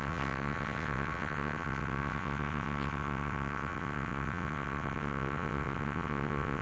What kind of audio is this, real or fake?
fake